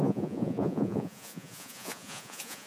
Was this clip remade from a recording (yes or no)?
yes